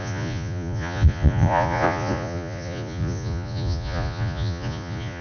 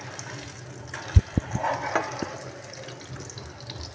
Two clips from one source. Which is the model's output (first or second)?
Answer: first